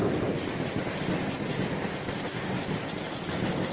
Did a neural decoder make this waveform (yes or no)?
no